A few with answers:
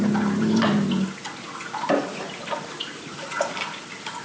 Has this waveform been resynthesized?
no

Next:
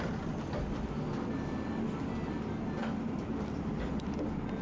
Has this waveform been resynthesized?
no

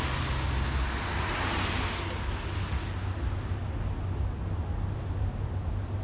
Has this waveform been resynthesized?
no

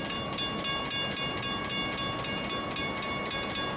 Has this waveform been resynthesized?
no